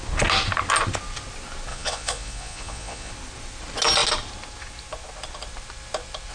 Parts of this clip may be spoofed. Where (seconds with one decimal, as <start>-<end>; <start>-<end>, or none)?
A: 1.7-3.1

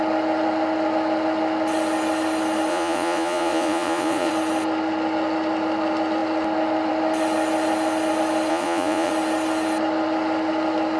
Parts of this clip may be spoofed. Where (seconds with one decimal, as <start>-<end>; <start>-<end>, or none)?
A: 2.7-4.3; 8.5-9.1